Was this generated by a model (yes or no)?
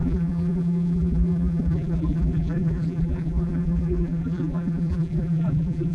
yes